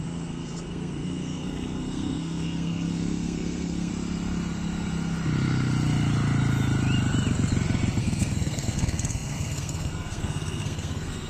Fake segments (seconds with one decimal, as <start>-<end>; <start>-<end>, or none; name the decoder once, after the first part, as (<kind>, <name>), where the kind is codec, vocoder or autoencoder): 0.0-3.9 (codec, SNAC); 8.0-11.3